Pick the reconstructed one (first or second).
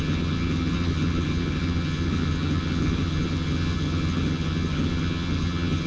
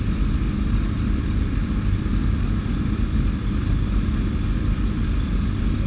first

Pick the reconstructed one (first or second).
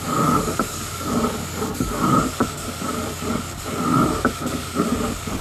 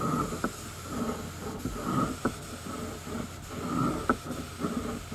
first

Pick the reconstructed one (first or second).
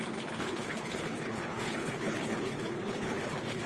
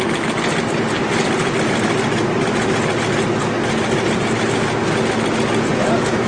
first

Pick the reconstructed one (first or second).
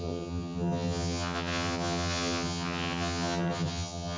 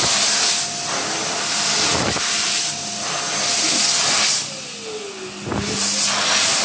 first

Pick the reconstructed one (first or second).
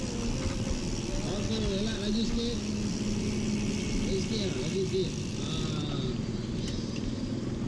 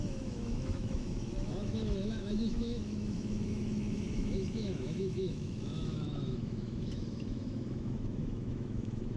second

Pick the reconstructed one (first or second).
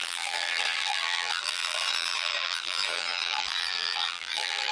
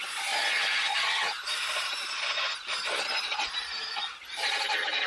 first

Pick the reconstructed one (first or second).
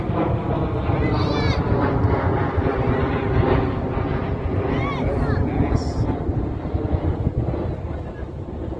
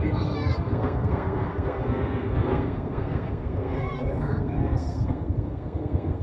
second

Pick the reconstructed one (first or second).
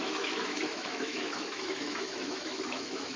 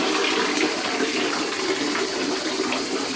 first